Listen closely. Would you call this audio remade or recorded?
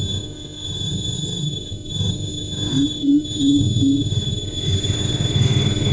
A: remade